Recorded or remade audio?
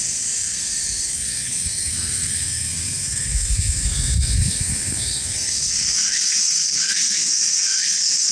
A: remade